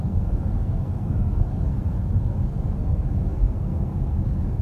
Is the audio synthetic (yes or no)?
yes